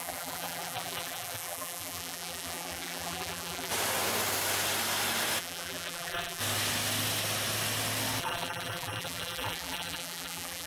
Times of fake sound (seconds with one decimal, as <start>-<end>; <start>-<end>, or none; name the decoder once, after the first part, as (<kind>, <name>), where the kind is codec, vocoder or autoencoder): 0.0-3.7 (vocoder, BigVGAN v2); 5.4-6.4; 8.2-10.7